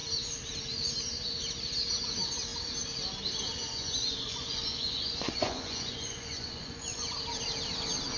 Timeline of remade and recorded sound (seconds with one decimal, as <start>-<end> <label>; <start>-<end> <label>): 0.0-3.6 recorded; 3.6-7.1 remade; 7.1-8.2 recorded